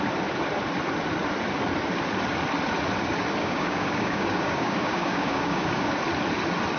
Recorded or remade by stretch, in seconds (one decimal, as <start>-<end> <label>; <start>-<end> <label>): 0.0-3.4 recorded; 3.4-5.9 remade; 5.9-6.8 recorded